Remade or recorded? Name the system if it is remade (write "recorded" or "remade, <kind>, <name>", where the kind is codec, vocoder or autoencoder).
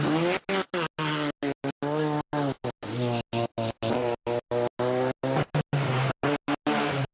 recorded